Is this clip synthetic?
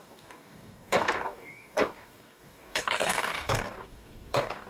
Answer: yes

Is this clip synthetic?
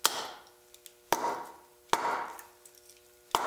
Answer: no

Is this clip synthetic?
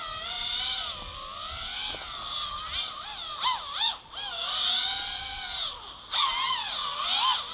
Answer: no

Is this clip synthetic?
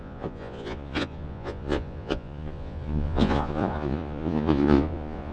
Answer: yes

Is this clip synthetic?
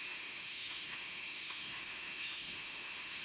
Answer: yes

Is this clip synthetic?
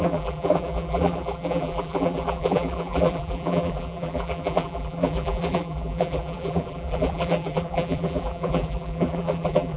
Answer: yes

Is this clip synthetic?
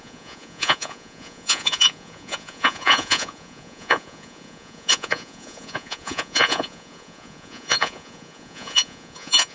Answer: yes